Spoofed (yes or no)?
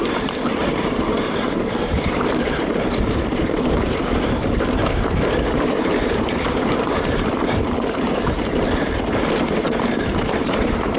yes